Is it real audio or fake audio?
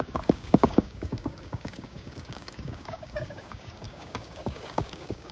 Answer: fake